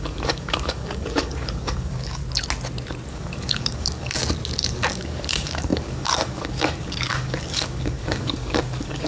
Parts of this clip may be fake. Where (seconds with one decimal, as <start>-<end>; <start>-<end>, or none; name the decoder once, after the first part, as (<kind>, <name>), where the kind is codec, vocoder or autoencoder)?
0.0-2.2 (codec, DAC); 3.1-4.2; 4.7-9.1

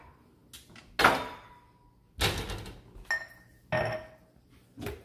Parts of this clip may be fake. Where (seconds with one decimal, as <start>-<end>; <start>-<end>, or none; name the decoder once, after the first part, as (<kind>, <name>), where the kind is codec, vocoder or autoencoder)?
none

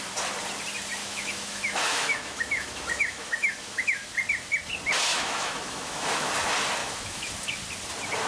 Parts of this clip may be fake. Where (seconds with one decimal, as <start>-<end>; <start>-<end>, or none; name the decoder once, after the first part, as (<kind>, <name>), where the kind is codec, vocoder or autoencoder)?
1.0-4.1 (autoencoder, DAC-VAE); 5.1-6.3; 6.8-7.3

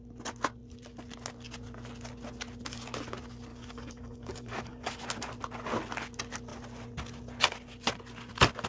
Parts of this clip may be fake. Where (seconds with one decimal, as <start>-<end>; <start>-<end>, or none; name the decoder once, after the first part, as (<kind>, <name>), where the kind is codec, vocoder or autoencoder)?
3.5-4.9 (codec, DAC)

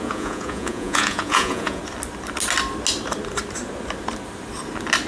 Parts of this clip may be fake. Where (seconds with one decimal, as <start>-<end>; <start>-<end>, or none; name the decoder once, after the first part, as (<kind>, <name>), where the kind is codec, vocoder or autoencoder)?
0.0-1.8 (vocoder, Vocos)

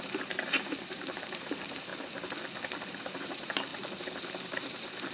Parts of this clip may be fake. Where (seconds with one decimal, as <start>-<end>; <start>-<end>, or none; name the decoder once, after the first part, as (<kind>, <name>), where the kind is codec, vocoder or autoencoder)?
0.0-1.9 (vocoder, BigVGAN v2); 3.0-3.7; 4.3-5.1

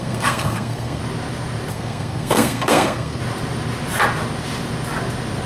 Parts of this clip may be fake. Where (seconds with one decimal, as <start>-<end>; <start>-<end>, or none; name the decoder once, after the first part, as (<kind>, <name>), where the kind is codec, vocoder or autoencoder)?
0.0-1.0 (codec, SNAC); 1.7-3.2